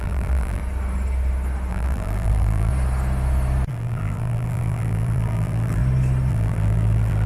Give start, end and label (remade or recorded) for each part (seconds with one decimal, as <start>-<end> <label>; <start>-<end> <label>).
0.0-0.6 remade; 0.6-1.7 recorded; 1.7-2.7 remade; 2.7-3.7 recorded; 3.7-5.8 remade; 5.8-6.3 recorded; 6.3-7.3 remade